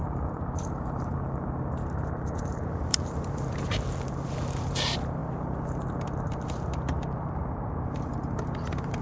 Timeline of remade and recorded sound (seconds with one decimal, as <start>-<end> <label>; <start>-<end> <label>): 0.0-9.0 remade